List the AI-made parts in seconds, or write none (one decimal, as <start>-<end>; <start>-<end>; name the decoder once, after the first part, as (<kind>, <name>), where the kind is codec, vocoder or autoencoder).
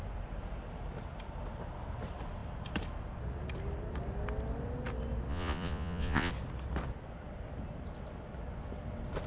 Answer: 5.3-6.3 (vocoder, Vocos)